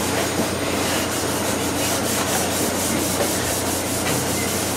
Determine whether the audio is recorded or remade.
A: recorded